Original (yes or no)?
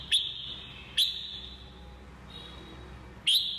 yes